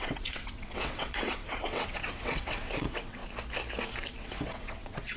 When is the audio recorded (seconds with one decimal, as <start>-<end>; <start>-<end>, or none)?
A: 3.2-4.2